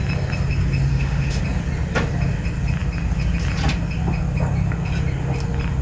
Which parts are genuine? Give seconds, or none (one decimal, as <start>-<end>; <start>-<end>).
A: 0.0-0.9; 1.4-5.8